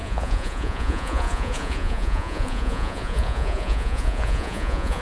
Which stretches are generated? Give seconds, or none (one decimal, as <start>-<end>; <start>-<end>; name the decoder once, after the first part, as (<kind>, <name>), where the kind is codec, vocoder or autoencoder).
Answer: 0.0-5.0 (vocoder, Vocos)